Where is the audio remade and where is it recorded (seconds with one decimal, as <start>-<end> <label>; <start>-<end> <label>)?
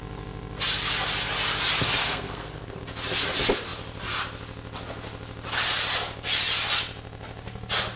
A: 0.0-2.0 recorded; 2.0-2.8 remade; 2.8-8.0 recorded